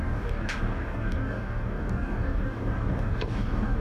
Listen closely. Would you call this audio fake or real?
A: fake